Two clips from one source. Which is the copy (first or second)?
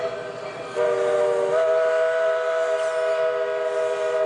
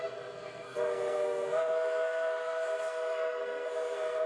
second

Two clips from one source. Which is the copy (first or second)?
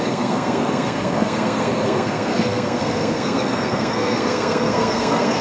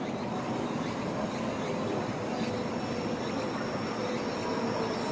first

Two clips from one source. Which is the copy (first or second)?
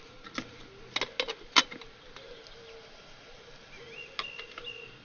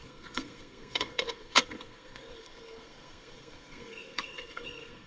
second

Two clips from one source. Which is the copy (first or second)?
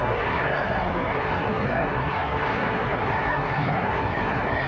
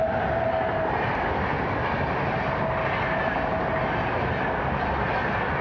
first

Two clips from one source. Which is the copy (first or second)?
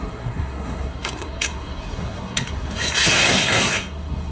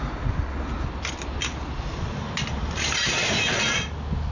first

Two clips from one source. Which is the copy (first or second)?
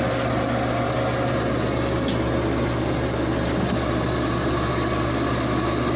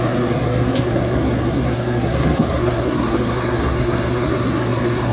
second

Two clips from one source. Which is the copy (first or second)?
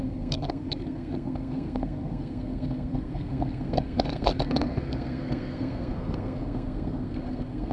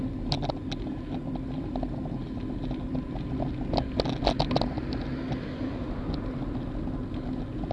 first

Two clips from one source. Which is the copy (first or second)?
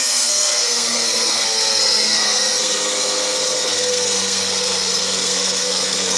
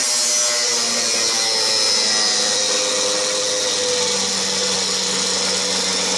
first